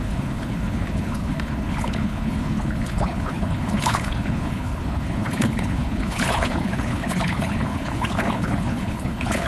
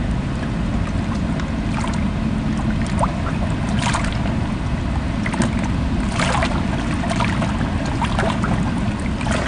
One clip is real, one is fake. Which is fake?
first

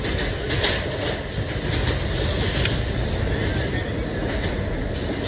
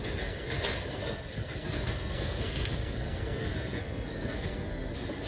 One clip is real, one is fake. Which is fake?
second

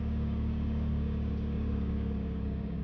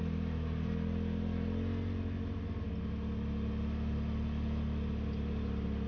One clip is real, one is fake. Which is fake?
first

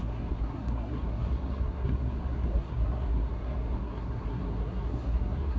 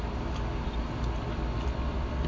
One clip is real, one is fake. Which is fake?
first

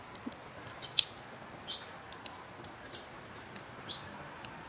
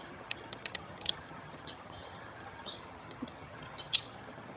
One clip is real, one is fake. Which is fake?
second